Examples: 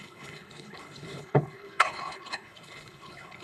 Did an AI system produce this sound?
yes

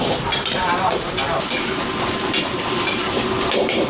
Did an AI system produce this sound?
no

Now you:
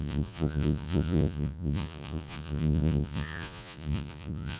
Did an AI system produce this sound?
yes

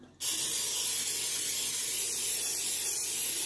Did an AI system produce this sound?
no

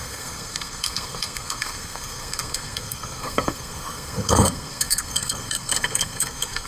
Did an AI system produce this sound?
yes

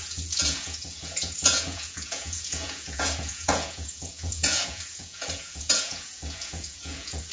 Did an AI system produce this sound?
yes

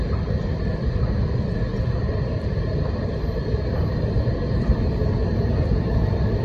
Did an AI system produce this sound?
yes